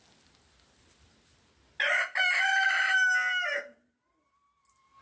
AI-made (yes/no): no